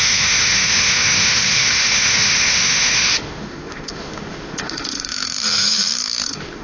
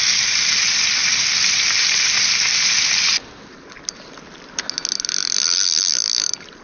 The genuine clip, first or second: second